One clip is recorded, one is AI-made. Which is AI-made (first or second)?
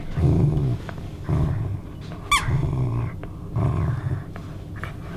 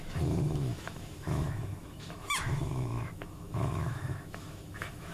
second